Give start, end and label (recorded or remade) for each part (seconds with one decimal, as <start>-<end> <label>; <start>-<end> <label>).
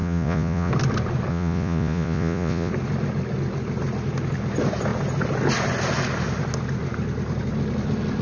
0.0-0.7 remade; 0.7-1.3 recorded; 1.3-2.7 remade; 2.7-8.2 recorded